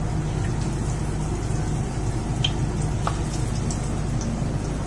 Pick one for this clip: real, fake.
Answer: real